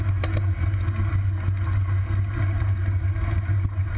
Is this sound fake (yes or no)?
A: no